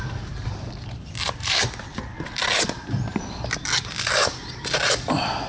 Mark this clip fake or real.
real